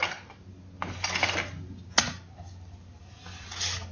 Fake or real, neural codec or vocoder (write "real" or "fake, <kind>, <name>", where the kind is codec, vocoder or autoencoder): real